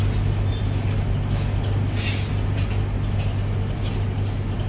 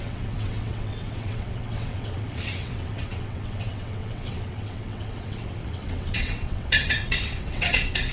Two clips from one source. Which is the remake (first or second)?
second